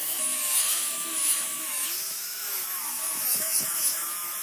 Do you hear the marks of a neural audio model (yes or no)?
yes